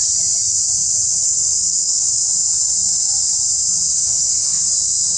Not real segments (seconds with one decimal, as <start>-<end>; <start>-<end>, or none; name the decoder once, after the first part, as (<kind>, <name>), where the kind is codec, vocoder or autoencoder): 1.2-2.0 (codec, SNAC); 3.9-4.6